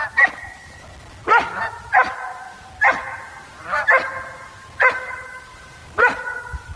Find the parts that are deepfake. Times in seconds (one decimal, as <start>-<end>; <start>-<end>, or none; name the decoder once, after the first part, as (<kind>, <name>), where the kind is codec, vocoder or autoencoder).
none